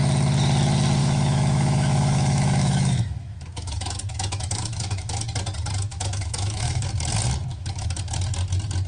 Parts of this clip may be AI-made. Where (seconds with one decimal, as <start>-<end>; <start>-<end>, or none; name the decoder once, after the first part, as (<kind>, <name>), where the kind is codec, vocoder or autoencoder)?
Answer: 1.0-5.2 (autoencoder, DAC-VAE); 5.9-6.9; 7.5-8.0